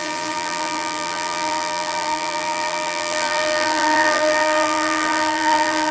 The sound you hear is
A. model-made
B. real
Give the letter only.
A